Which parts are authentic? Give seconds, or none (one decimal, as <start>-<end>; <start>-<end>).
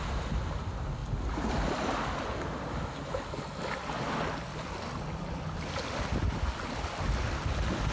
0.0-7.9